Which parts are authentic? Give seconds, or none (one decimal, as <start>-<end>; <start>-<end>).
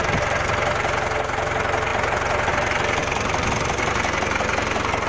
0.0-5.1